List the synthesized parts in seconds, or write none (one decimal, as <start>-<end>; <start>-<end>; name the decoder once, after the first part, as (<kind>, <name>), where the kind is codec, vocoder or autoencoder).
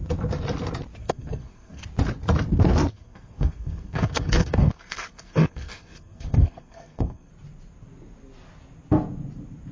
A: 1.0-1.8 (codec, SNAC); 2.9-7.3